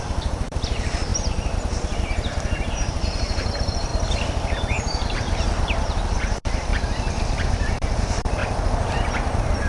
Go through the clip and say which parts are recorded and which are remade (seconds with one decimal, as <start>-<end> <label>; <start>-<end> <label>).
0.0-3.9 remade; 3.9-4.8 recorded; 4.8-6.7 remade; 6.7-7.5 recorded; 7.5-8.4 remade; 8.4-9.7 recorded